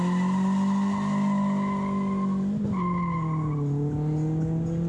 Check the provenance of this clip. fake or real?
real